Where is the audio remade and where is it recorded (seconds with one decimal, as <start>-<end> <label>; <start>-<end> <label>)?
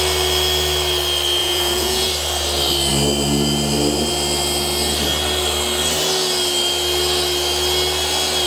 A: 0.0-1.4 recorded; 1.4-2.1 remade; 2.1-8.5 recorded